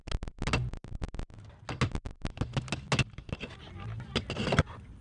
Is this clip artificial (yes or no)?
no